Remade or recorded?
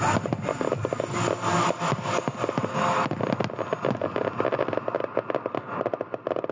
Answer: recorded